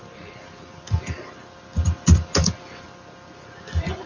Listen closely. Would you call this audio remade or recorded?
recorded